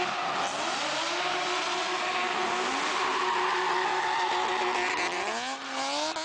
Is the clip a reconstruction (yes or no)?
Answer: no